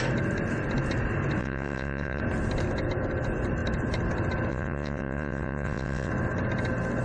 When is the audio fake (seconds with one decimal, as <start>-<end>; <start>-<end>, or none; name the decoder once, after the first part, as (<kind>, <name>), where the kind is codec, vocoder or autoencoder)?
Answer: 1.4-2.2 (vocoder, WaveNeXt); 4.5-6.1